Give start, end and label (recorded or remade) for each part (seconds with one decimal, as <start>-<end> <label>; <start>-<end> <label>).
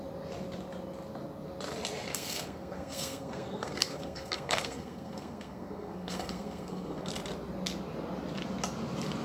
0.0-2.1 recorded; 2.1-7.1 remade; 7.1-9.2 recorded